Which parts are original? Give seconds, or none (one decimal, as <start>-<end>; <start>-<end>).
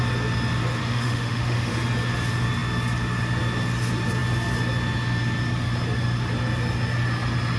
0.0-0.8; 1.7-7.6